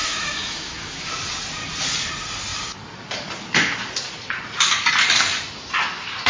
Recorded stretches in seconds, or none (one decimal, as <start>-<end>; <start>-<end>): 1.1-6.3